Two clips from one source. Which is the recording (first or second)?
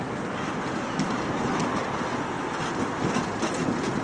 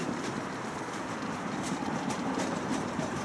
first